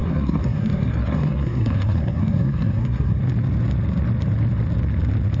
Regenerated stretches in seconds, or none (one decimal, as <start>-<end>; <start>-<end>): 0.0-3.2